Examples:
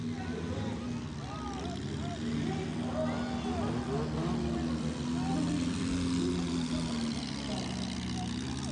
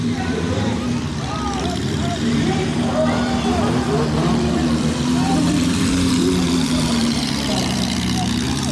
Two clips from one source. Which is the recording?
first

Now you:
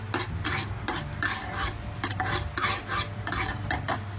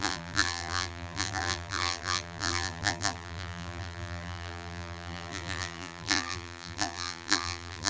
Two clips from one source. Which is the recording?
first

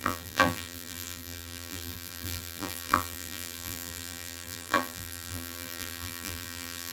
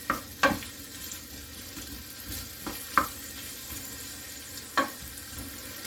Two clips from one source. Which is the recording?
second